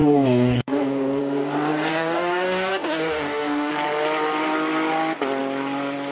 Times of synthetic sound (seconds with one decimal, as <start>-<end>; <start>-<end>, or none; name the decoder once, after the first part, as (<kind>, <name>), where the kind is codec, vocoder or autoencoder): 0.0-1.2 (codec, DAC); 1.9-3.7